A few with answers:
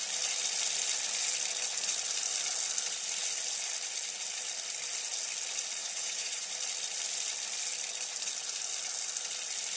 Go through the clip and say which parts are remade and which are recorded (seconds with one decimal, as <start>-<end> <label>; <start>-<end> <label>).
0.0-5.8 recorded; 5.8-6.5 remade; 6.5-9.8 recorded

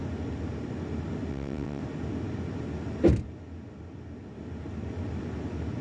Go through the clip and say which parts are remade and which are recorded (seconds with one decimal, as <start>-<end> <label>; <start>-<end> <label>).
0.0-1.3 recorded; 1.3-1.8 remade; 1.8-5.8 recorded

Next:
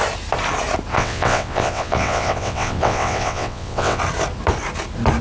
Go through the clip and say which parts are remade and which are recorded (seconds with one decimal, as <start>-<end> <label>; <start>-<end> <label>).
0.0-0.9 recorded; 0.9-4.0 remade; 4.0-5.2 recorded

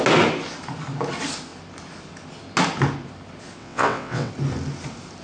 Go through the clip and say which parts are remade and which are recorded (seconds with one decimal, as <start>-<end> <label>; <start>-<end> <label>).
0.0-3.6 recorded; 3.6-4.3 remade; 4.3-5.2 recorded

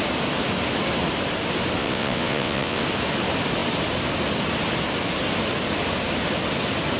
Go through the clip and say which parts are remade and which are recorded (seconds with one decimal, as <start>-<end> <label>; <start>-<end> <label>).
0.0-1.8 recorded; 1.8-2.8 remade; 2.8-7.0 recorded

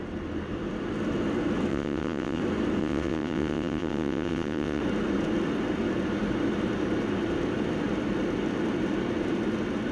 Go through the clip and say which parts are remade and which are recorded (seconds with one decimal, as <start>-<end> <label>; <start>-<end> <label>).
0.0-1.7 recorded; 1.7-2.4 remade; 2.4-2.8 recorded; 2.8-4.8 remade; 4.8-9.9 recorded

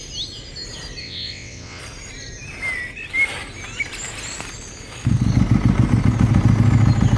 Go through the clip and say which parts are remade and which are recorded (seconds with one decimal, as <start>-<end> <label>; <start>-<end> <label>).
0.0-1.0 recorded; 1.0-1.8 remade; 1.8-7.2 recorded

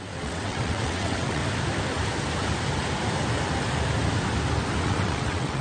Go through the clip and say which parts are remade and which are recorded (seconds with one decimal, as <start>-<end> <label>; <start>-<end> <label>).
0.0-1.4 remade; 1.4-4.8 recorded; 4.8-5.6 remade